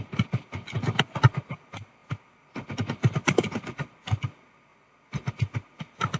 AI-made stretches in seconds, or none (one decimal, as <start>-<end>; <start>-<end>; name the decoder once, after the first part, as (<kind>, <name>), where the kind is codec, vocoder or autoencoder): none